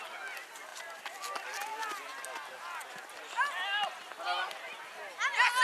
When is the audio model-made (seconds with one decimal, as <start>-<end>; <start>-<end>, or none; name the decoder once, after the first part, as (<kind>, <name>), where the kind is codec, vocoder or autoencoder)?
none